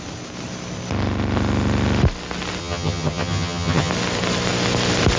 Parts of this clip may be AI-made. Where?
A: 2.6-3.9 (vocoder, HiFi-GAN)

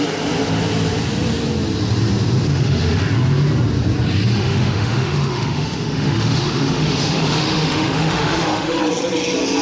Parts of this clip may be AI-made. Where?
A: 2.5-3.0 (autoencoder, DAC-VAE); 4.3-8.8

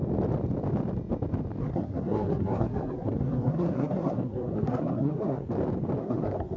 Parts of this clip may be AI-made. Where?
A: 1.6-5.5 (codec, SNAC); 6.0-6.6

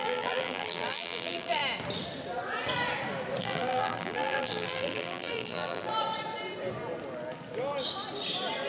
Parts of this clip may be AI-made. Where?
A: 0.0-1.6 (vocoder, BigVGAN v2); 3.4-5.9

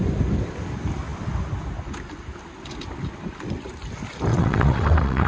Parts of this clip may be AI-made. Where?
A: 4.3-5.3 (vocoder, WaveNeXt)

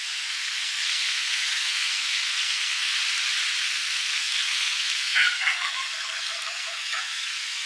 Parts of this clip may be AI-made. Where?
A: 0.0-3.0 (codec, SNAC); 3.6-7.7